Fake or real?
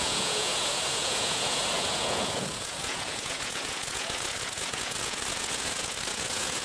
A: fake